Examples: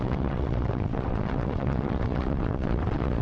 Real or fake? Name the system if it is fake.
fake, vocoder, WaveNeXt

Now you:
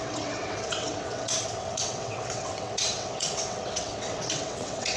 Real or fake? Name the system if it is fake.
fake, vocoder, WaveNeXt